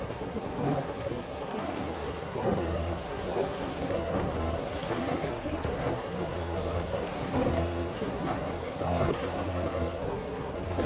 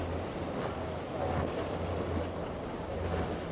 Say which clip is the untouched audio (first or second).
second